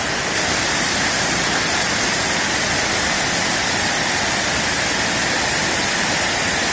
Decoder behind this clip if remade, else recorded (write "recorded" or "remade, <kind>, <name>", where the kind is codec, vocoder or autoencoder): remade, vocoder, BigVGAN v2